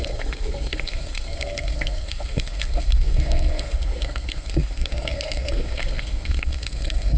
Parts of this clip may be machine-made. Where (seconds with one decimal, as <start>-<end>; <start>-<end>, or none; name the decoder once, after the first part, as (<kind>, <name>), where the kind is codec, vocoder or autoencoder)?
0.0-7.2 (codec, SNAC)